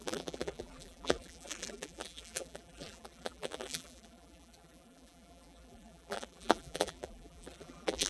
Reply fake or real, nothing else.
fake